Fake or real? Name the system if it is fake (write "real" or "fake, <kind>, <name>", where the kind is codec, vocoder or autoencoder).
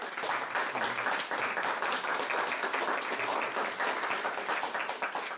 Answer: fake, vocoder, BigVGAN v2